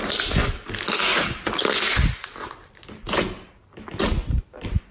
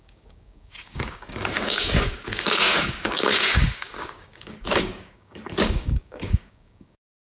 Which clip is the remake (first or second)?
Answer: second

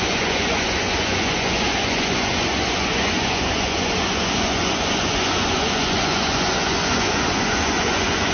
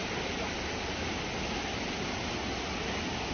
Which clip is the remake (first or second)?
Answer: first